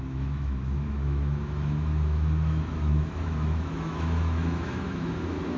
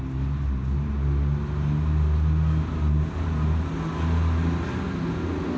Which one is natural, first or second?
second